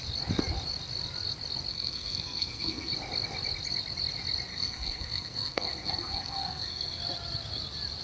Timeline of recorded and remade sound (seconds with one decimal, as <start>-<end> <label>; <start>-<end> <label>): 0.0-1.7 recorded; 1.7-2.9 remade; 2.9-4.5 recorded; 4.5-7.0 remade; 7.0-8.0 recorded